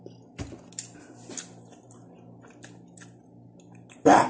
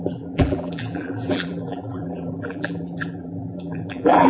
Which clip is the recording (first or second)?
first